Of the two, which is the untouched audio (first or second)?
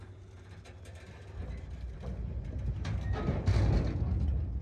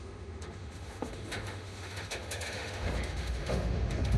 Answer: first